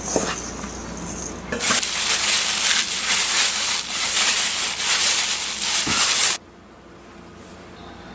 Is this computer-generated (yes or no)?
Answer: no